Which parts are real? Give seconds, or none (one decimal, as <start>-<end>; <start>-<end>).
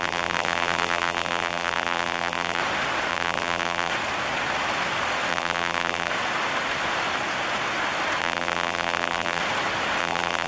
2.6-3.1; 3.9-5.3; 6.1-8.2; 9.4-10.0